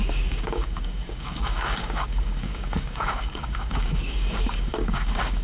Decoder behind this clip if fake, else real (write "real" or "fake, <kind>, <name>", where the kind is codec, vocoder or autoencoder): fake, codec, DAC